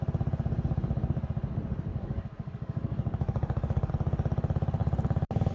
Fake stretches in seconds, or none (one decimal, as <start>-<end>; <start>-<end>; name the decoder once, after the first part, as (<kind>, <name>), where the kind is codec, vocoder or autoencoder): 1.9-3.9 (codec, DAC)